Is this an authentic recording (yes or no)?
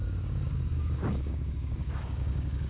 no